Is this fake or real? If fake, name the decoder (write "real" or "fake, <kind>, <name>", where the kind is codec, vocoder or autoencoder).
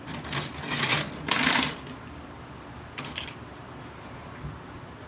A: real